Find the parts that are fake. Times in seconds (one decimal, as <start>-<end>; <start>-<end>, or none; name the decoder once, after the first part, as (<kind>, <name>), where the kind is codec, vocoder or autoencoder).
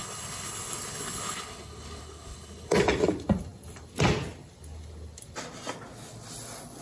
0.0-2.8 (codec, HILCodec)